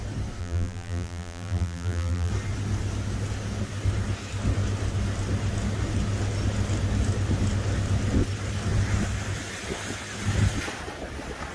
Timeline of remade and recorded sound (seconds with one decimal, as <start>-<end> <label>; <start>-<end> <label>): 0.0-0.4 recorded; 0.4-2.3 remade; 2.3-11.5 recorded